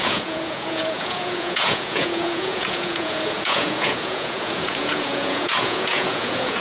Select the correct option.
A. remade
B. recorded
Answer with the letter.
A